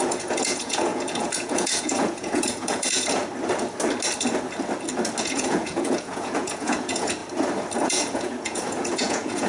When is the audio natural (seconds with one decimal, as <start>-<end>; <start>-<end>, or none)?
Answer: 3.2-5.2; 7.2-7.8